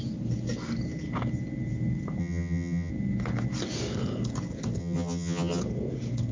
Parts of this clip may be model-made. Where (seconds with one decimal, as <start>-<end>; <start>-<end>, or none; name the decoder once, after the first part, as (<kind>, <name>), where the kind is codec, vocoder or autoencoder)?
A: 2.2-2.9 (vocoder, HiFi-GAN); 4.8-5.6